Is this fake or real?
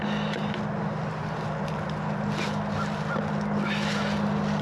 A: real